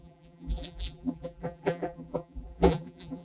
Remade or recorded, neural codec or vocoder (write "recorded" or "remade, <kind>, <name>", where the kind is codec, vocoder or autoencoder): remade, vocoder, BigVGAN v2